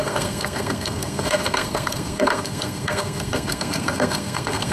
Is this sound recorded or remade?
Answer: remade